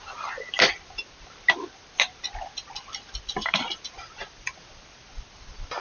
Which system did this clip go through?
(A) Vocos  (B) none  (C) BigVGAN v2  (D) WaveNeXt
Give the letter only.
B